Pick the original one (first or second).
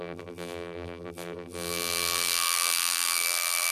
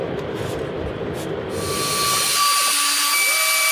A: second